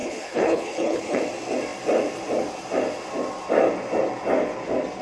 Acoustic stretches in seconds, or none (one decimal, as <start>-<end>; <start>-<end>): 1.2-5.0